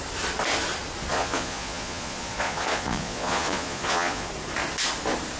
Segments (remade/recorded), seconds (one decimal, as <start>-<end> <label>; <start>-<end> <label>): 0.0-1.1 recorded; 1.1-4.3 remade; 4.3-5.4 recorded